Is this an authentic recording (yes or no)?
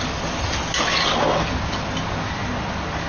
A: yes